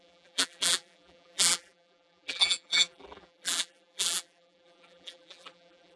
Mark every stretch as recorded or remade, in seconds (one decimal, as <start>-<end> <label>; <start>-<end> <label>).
0.0-6.0 remade